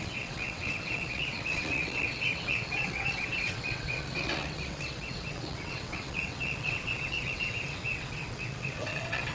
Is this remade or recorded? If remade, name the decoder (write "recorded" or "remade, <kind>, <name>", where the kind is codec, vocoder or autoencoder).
remade, vocoder, WaveNeXt